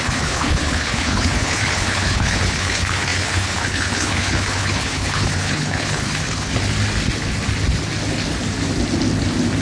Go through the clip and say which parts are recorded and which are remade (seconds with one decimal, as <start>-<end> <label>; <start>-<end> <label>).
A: 0.0-6.5 remade; 6.5-9.6 recorded